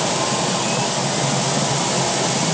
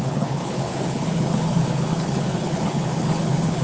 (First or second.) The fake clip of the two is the second